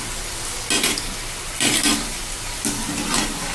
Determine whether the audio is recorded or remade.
recorded